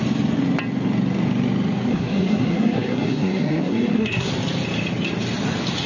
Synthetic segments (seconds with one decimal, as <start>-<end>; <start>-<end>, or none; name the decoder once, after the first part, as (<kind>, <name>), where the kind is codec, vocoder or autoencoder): 1.9-4.3 (codec, SNAC)